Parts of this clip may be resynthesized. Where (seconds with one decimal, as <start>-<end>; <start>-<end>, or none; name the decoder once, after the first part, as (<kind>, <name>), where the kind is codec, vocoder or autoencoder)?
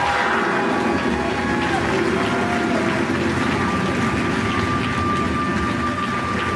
none